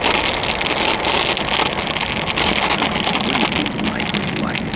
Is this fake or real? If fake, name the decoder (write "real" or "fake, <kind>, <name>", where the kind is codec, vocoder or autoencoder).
real